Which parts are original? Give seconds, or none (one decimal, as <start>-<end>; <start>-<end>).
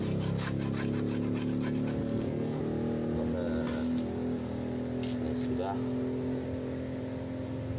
0.0-2.0; 2.6-7.8